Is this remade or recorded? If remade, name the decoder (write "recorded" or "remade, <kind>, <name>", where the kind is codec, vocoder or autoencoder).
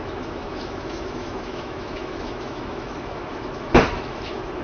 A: remade, autoencoder, DAC-VAE